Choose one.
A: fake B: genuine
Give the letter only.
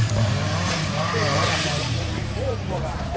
A